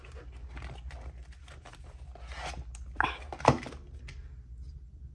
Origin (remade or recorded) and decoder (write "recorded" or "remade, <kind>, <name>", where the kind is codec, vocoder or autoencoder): recorded